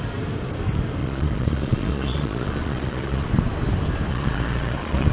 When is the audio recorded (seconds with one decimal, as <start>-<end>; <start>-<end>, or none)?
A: 0.0-1.0; 3.3-4.1